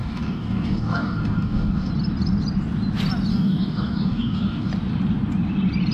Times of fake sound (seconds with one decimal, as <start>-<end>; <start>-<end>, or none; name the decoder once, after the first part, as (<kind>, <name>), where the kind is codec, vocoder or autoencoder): 0.0-1.9 (codec, DAC); 3.3-4.7